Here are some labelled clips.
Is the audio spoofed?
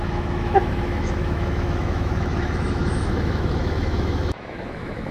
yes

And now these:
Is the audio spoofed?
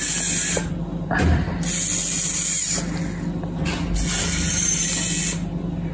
no